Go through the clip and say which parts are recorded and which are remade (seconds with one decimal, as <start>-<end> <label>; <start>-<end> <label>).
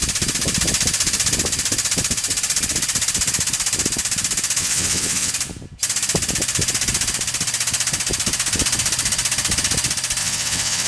0.0-4.6 recorded; 4.6-5.3 remade; 5.3-10.2 recorded; 10.2-10.9 remade